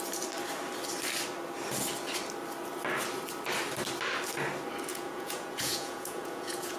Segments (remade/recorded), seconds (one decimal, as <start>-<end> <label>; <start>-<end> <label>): 0.0-4.9 recorded; 4.9-6.8 remade